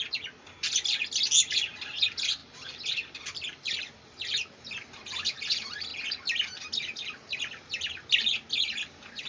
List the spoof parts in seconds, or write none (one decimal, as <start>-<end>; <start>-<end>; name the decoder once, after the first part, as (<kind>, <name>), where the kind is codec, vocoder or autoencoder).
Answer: none